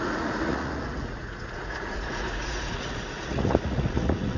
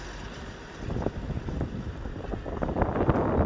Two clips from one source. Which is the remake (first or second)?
first